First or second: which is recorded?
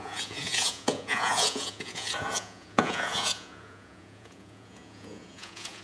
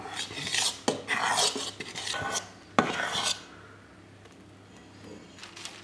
second